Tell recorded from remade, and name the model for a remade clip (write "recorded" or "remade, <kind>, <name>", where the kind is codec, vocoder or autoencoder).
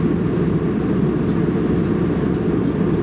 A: recorded